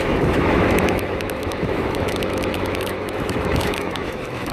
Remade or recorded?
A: remade